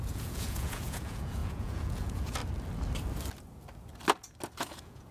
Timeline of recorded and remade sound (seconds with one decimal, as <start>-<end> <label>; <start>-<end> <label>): 0.0-2.4 remade; 2.4-4.6 recorded; 4.6-5.1 remade

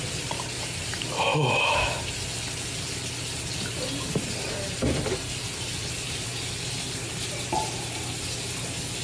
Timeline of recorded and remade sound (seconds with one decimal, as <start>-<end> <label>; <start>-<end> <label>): 0.0-1.3 recorded; 1.3-2.0 remade; 2.0-9.0 recorded

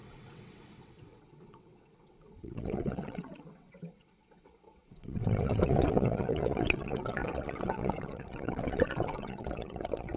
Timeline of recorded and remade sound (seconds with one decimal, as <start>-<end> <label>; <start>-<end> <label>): 0.0-10.2 remade

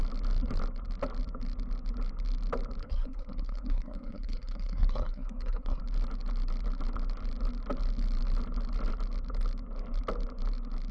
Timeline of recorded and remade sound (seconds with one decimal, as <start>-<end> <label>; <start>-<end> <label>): 0.0-2.8 recorded; 2.8-5.8 remade; 5.8-10.9 recorded

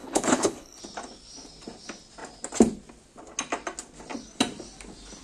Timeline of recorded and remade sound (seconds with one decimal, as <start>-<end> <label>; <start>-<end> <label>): 0.0-0.8 remade; 0.8-5.2 recorded